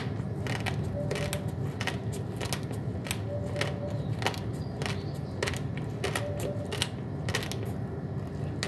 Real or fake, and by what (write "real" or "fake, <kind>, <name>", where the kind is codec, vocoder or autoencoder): real